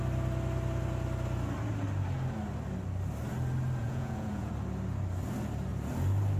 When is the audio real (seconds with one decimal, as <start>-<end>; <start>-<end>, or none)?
0.0-3.8; 4.5-6.4